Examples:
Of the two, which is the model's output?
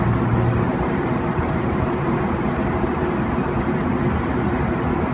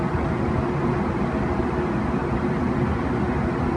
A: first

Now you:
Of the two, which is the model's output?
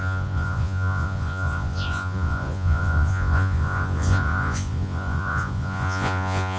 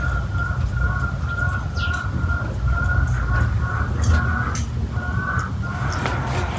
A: first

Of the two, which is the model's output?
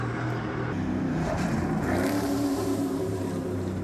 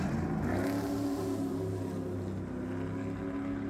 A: first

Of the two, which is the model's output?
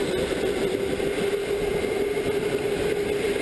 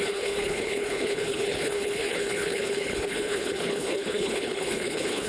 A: second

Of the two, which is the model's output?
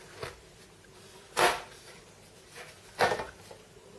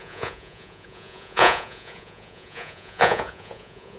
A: second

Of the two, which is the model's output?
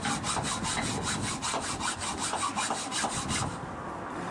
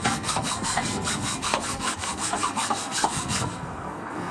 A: second